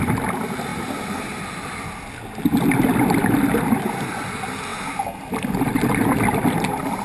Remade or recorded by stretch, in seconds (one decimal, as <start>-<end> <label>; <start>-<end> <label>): 0.0-7.0 recorded